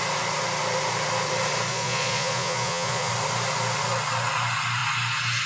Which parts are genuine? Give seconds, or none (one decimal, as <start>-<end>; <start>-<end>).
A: 0.0-1.7; 3.1-5.5